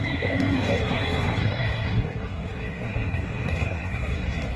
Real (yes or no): no